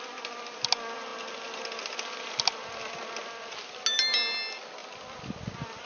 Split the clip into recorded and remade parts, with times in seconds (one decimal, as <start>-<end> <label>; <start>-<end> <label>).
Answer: 0.0-5.9 recorded